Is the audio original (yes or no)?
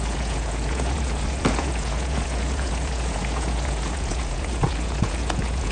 no